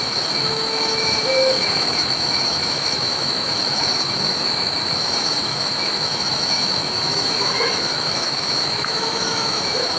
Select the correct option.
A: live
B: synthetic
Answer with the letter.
B